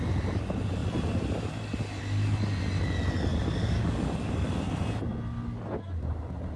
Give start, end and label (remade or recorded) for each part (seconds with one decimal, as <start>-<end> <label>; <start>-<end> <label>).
0.0-3.3 recorded; 3.3-4.3 remade; 4.3-6.6 recorded